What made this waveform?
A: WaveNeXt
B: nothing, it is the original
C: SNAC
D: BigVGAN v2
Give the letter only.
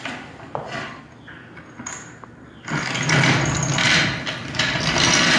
B